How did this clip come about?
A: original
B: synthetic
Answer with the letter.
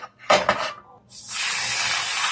A